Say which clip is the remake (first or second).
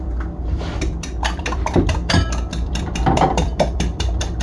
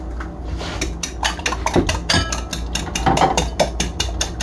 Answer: first